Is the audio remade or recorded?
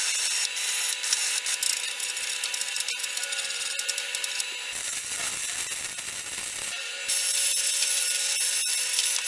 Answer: recorded